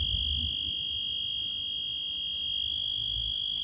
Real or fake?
real